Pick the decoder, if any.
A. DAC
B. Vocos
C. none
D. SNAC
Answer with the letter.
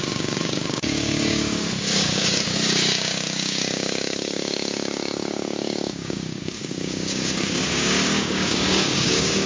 A